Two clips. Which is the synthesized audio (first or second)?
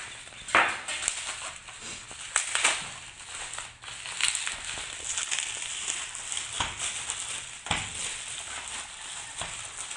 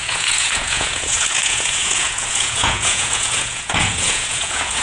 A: second